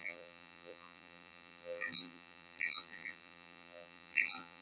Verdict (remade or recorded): remade